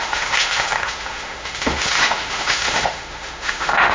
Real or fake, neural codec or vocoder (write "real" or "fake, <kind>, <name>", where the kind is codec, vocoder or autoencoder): fake, autoencoder, DAC-VAE